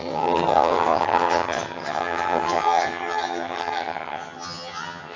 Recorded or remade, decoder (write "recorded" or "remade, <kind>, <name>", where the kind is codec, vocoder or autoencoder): remade, vocoder, HiFi-GAN